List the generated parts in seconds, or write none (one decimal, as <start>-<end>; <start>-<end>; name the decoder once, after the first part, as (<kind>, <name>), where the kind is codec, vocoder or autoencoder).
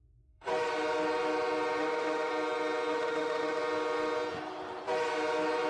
0.0-0.5 (autoencoder, DAC-VAE); 1.8-2.3; 2.9-3.6